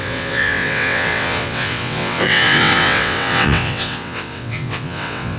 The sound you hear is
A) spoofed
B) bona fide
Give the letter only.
A